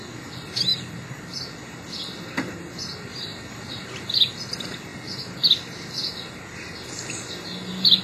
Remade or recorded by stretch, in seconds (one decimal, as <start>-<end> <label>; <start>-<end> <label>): 0.0-3.3 recorded; 3.3-4.1 remade; 4.1-8.0 recorded